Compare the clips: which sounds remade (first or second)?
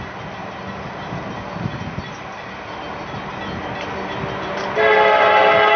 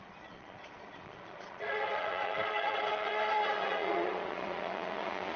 second